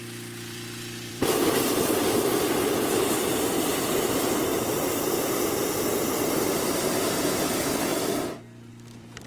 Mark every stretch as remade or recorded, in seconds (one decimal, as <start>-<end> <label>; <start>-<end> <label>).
0.0-2.3 remade; 2.3-3.5 recorded; 3.5-7.9 remade; 7.9-8.7 recorded; 8.7-9.3 remade

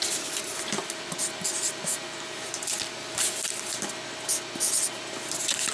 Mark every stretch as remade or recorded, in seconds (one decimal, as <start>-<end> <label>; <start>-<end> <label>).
0.0-5.7 recorded